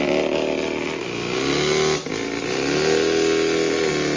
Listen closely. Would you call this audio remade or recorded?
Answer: recorded